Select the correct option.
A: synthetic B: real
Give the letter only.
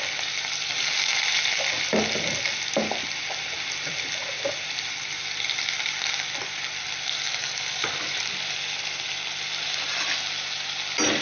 B